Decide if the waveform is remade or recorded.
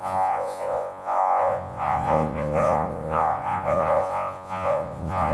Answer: remade